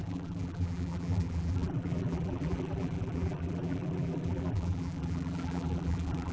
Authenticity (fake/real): fake